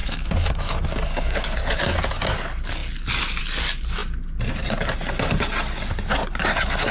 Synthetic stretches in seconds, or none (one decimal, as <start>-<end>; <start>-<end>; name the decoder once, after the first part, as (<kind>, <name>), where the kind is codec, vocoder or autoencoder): 0.0-1.8 (codec, DAC)